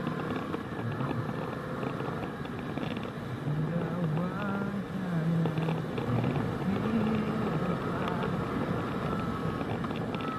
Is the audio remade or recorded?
recorded